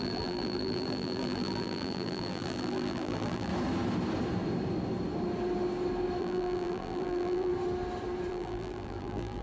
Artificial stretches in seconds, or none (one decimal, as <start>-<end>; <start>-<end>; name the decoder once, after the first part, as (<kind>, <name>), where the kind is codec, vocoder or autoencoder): 0.0-3.5 (vocoder, BigVGAN v2); 6.2-7.5; 8.3-9.4

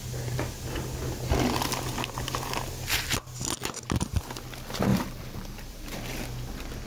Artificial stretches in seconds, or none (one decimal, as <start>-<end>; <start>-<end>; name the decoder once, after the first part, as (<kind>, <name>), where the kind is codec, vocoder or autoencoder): 4.9-6.2 (vocoder, BigVGAN v2)

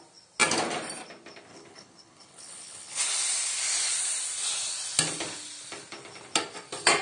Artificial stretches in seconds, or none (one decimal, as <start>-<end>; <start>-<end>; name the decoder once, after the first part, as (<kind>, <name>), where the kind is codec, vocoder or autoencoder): 1.5-3.0 (codec, HILCodec)

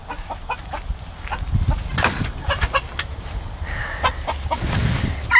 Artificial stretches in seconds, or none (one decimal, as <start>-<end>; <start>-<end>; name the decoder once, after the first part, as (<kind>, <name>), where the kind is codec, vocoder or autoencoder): none

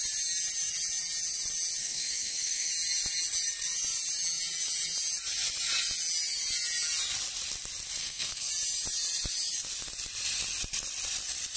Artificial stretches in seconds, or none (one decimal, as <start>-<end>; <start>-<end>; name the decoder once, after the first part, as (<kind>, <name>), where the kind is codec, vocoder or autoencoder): 1.8-2.7 (codec, SNAC); 8.0-8.5

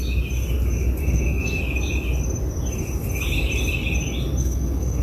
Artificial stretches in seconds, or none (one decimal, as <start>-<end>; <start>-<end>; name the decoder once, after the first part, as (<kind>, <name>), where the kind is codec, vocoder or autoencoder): 1.0-1.6 (codec, SNAC); 4.4-5.0

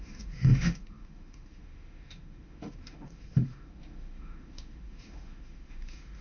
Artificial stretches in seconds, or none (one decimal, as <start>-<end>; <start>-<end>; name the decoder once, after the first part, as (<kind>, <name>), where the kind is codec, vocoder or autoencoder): 0.0-6.2 (autoencoder, DAC-VAE)